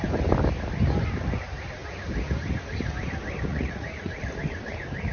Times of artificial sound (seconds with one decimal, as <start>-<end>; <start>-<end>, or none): 3.5-4.2